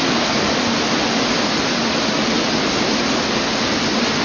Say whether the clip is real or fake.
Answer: real